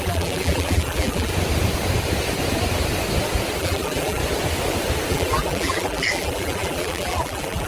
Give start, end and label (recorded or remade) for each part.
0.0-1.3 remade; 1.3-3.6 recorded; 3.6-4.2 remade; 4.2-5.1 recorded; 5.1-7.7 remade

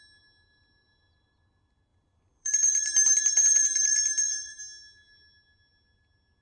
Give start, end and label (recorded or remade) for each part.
0.0-1.9 recorded; 1.9-4.6 remade; 4.6-6.4 recorded

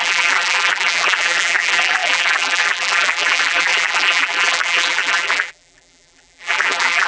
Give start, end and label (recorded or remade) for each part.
0.0-7.1 remade

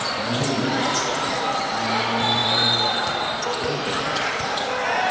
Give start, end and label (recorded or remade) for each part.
0.0-2.4 recorded; 2.4-3.0 remade; 3.0-5.1 recorded

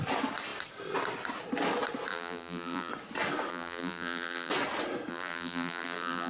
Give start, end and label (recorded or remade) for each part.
0.0-2.1 recorded; 2.1-2.9 remade; 2.9-3.5 recorded; 3.5-4.5 remade; 4.5-5.1 recorded; 5.1-6.3 remade